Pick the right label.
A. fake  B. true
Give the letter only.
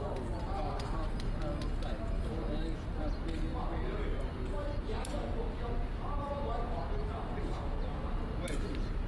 B